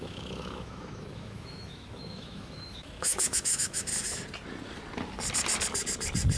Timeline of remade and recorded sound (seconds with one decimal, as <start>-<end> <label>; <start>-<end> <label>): 0.0-3.9 remade; 3.9-6.4 recorded